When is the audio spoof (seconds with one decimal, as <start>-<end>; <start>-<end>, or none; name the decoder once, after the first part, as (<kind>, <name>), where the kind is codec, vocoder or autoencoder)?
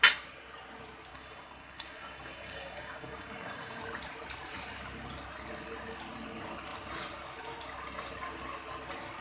1.1-3.8 (codec, DAC)